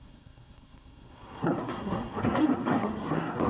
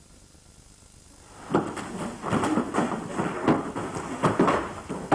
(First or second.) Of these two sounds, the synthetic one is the first